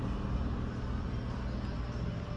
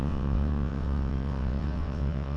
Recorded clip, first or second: first